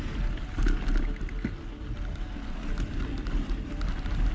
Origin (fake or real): real